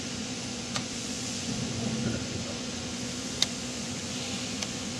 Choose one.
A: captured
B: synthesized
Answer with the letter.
B